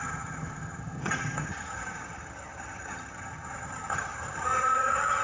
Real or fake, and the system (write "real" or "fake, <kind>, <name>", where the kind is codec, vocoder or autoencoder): fake, vocoder, HiFi-GAN